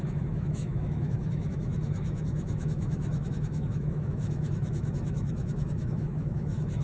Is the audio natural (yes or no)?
no